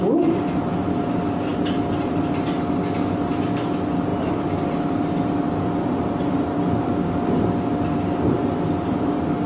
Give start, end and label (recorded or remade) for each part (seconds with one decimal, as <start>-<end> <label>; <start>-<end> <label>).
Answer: 0.0-9.5 recorded